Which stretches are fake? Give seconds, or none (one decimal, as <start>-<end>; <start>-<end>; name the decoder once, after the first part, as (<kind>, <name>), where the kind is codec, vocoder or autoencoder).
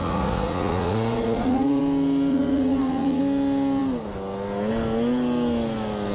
0.0-1.8 (vocoder, Vocos); 2.3-3.2